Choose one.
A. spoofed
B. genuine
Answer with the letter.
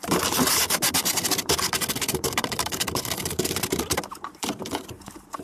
A